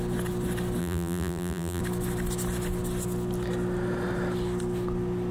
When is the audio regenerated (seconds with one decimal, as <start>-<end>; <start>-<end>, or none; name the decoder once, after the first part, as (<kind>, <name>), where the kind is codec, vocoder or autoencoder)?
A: 0.8-1.8 (vocoder, BigVGAN v2)